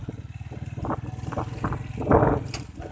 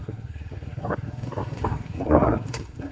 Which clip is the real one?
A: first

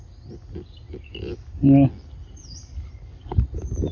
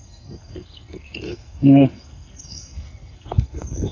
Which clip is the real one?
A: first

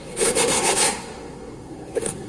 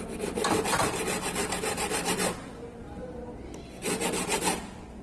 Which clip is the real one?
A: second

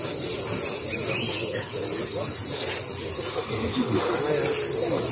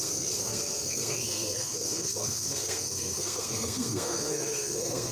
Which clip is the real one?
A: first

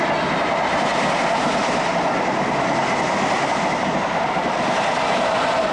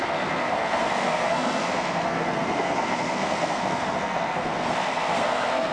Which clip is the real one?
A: first